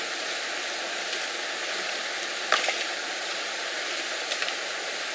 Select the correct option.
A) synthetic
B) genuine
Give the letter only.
B